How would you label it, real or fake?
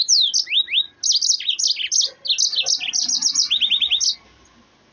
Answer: real